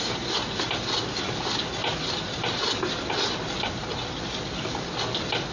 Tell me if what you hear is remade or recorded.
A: recorded